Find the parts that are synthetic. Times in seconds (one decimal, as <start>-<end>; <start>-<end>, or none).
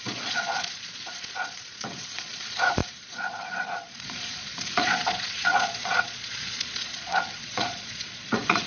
0.0-8.7